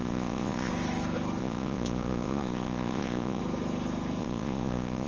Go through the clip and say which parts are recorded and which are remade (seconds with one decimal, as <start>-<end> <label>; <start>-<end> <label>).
0.0-0.7 remade; 0.7-1.4 recorded; 1.4-3.4 remade; 3.4-4.2 recorded; 4.2-5.1 remade